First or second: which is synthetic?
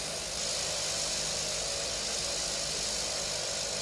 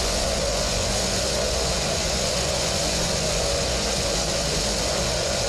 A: second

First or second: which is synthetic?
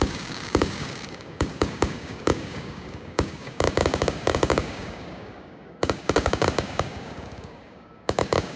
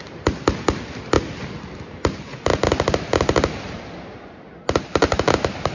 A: first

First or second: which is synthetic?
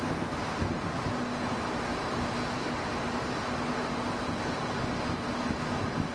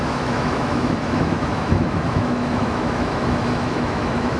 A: second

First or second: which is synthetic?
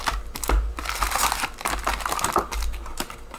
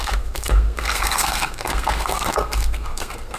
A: second